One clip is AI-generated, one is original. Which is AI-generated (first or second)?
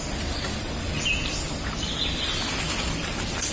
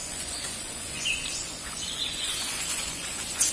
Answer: second